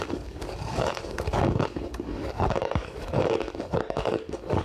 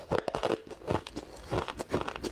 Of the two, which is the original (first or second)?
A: second